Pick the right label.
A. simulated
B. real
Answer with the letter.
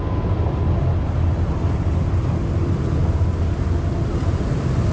B